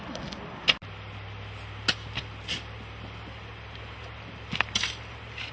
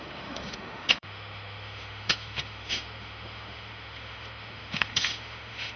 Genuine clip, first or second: first